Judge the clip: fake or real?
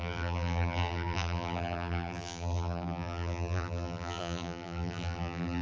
fake